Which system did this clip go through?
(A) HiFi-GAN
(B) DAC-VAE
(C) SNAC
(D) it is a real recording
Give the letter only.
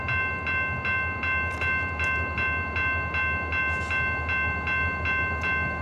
D